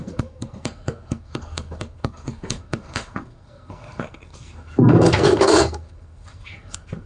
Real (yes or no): no